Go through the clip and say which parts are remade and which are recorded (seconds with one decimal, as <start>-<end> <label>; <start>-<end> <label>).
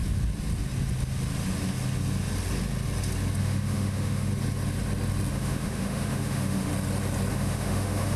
0.0-3.4 recorded; 3.4-4.3 remade; 4.3-5.3 recorded; 5.3-6.7 remade; 6.7-7.3 recorded; 7.3-8.2 remade